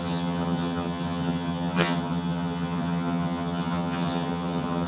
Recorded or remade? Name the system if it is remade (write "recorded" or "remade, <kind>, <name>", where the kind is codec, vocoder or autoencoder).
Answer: remade, vocoder, HiFi-GAN